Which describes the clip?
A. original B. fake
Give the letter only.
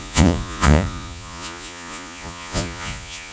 B